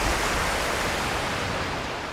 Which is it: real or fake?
real